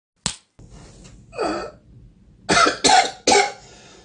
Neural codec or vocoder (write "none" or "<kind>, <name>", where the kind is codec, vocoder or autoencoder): none